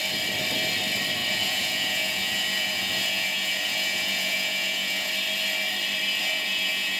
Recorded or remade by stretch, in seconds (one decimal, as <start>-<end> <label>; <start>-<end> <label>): 0.0-1.2 recorded; 1.2-5.1 remade; 5.1-6.2 recorded; 6.2-7.0 remade